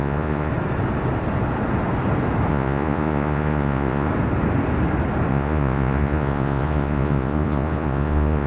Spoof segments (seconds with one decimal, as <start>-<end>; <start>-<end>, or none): 0.0-0.5; 2.5-4.1; 5.3-8.5

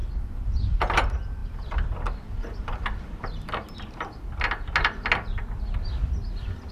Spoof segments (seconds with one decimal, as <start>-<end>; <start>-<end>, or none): none

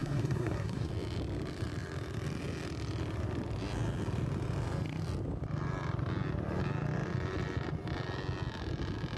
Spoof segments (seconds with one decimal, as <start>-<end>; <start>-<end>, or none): 0.0-0.9

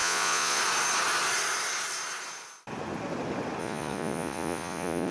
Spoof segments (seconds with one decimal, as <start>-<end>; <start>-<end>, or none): 0.0-0.6; 3.6-5.1

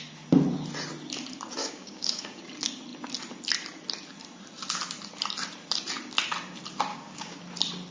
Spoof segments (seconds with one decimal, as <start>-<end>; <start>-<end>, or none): 1.6-2.4; 6.9-7.4

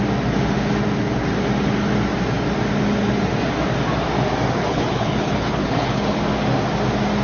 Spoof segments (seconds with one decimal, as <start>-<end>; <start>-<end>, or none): 4.6-6.2

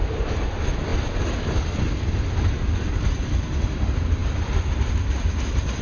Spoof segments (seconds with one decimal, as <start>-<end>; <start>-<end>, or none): none